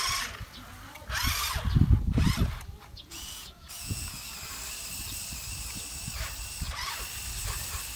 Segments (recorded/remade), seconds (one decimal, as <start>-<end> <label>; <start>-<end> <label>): 0.0-2.9 recorded; 2.9-4.2 remade; 4.2-8.0 recorded